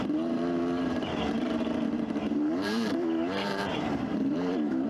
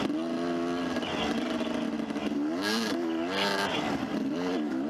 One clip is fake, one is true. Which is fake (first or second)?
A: first